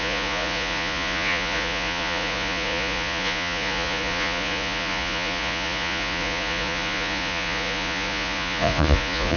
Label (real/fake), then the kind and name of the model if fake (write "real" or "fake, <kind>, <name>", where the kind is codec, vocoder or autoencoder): fake, vocoder, Vocos